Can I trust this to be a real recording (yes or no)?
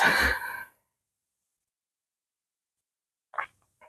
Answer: yes